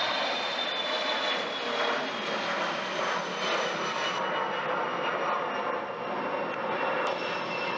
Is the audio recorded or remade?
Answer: recorded